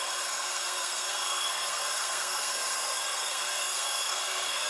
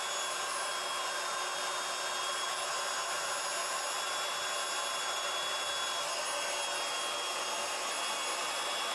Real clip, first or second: second